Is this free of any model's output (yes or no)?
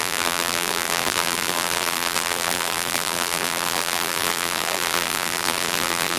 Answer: no